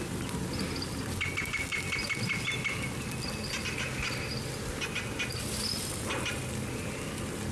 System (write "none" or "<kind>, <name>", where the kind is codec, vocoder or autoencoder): none